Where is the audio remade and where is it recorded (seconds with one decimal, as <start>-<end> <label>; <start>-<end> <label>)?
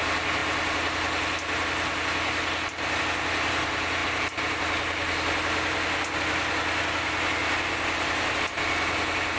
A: 0.0-9.4 recorded